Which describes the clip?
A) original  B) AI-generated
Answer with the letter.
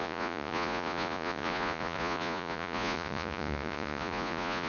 B